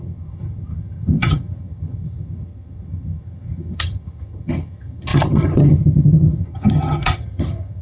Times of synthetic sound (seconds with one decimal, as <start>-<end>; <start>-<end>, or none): 0.0-7.8